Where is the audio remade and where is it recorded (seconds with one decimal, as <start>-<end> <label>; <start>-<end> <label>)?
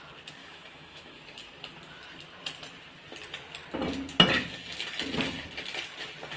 0.0-0.4 recorded; 0.4-1.2 remade; 1.2-6.4 recorded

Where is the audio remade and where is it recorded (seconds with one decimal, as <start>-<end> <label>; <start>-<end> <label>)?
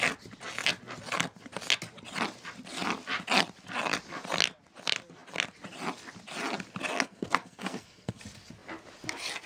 0.0-6.9 recorded; 6.9-8.2 remade; 8.2-9.5 recorded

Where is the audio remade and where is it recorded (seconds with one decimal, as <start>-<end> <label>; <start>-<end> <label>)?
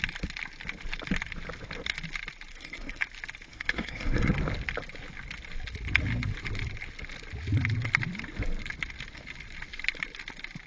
0.0-2.5 recorded; 2.5-3.0 remade; 3.0-3.5 recorded; 3.5-4.3 remade; 4.3-10.7 recorded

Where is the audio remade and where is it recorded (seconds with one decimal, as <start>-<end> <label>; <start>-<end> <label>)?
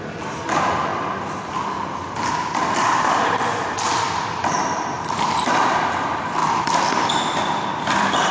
0.0-0.9 remade; 0.9-1.5 recorded; 1.5-8.3 remade